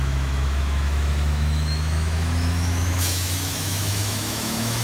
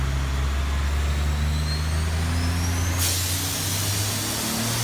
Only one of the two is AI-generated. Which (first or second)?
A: first